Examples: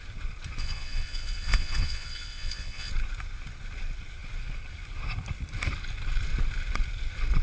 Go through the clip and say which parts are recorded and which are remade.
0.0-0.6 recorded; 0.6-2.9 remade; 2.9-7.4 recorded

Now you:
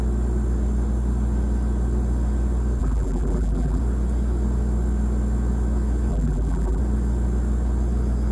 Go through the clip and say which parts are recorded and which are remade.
0.0-2.8 recorded; 2.8-3.8 remade; 3.8-6.1 recorded; 6.1-6.8 remade; 6.8-8.3 recorded

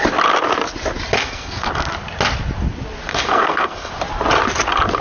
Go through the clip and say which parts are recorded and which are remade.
0.0-1.2 recorded; 1.2-1.7 remade; 1.7-3.1 recorded; 3.1-3.9 remade; 3.9-5.0 recorded

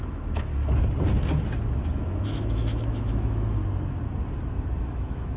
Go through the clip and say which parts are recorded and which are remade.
0.0-0.5 remade; 0.5-1.9 recorded; 1.9-3.6 remade; 3.6-4.8 recorded; 4.8-5.4 remade

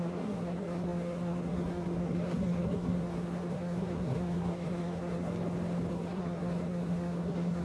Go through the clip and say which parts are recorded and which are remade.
0.0-5.3 remade; 5.3-5.9 recorded; 5.9-7.6 remade

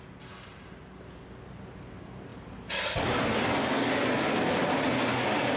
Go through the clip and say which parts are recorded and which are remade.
0.0-5.6 recorded